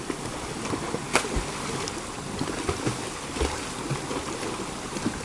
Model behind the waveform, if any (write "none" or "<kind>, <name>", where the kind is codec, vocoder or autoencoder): none